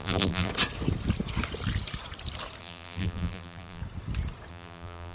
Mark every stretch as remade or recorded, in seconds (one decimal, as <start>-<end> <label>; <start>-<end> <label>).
0.0-0.5 remade; 0.5-2.6 recorded; 2.6-3.8 remade; 3.8-4.5 recorded; 4.5-5.1 remade